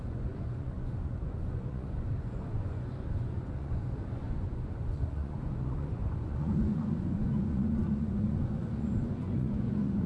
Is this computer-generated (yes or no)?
yes